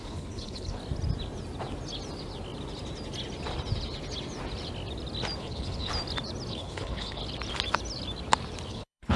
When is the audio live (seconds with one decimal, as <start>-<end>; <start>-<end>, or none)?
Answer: 0.8-5.4; 5.9-6.5; 7.2-8.7